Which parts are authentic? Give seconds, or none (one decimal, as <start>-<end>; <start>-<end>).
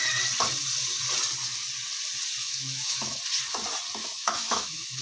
0.0-2.4; 3.2-4.0